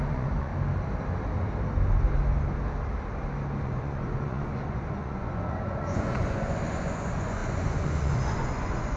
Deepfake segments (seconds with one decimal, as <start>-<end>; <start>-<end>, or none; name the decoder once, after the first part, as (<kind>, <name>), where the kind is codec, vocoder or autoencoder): 0.0-0.5 (vocoder, Vocos); 3.6-9.0